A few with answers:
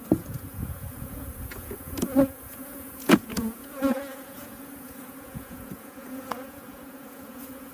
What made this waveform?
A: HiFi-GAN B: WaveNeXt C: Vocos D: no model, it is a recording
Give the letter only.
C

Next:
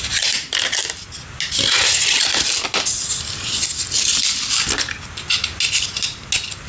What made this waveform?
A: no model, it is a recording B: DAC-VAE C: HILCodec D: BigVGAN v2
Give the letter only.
A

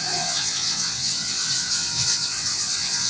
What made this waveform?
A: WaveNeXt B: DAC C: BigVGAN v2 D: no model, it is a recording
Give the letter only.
A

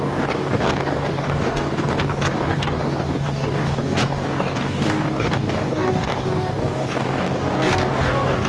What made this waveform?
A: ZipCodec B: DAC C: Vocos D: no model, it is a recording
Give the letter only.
B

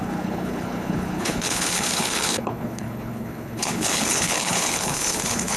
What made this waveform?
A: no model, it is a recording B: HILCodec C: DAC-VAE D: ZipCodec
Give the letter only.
B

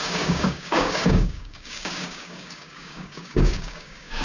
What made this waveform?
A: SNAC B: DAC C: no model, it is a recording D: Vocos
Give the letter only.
B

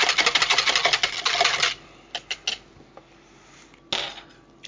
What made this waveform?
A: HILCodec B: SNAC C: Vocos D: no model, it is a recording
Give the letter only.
D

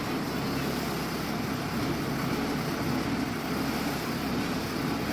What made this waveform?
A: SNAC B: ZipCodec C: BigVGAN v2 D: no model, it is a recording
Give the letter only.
D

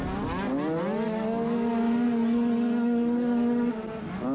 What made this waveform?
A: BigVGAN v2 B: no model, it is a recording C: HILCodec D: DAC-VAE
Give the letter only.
B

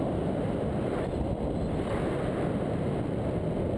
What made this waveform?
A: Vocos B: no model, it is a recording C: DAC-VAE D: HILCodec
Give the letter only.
B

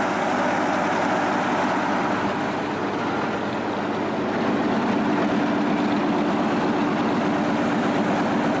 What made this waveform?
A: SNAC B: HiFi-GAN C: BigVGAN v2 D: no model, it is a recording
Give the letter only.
D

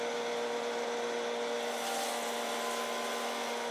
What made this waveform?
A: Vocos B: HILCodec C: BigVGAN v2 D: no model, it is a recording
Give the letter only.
D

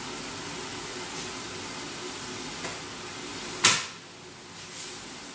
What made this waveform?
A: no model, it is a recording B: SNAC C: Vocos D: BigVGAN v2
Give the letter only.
A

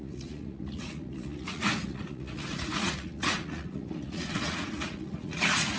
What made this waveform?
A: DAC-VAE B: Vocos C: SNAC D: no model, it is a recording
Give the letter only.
B